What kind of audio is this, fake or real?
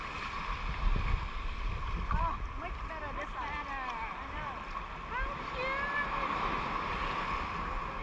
real